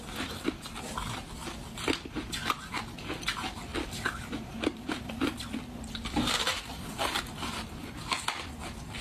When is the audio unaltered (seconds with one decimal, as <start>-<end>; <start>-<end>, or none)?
0.0-3.7; 8.5-9.0